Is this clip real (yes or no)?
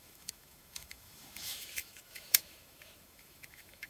no